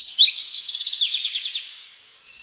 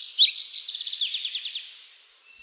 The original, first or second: second